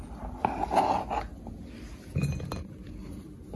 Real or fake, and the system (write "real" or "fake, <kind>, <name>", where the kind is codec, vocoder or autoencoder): real